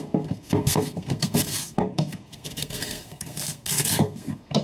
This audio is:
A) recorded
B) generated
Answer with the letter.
B